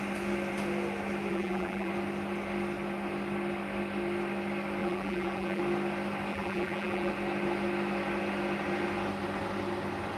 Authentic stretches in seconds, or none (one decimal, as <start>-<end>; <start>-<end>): 0.0-1.3; 1.9-4.8; 5.6-6.3; 7.1-10.2